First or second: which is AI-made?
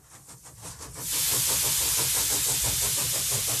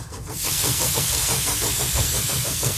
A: second